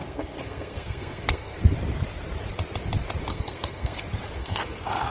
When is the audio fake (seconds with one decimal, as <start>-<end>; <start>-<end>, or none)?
0.0-1.6; 3.3-4.0; 4.4-5.1